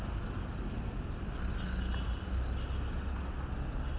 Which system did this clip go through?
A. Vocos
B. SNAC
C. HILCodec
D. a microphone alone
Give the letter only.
D